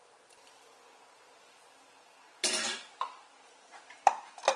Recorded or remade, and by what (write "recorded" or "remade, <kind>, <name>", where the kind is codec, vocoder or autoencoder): recorded